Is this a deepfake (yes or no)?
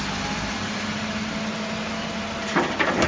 no